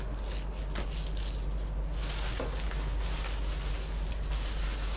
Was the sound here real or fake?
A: real